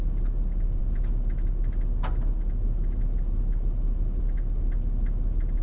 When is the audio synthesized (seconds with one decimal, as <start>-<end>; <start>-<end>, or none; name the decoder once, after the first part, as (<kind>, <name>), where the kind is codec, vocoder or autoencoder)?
none